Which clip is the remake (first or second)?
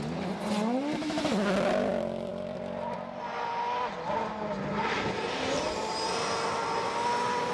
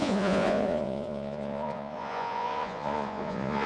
second